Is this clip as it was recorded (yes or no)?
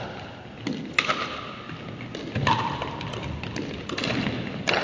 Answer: yes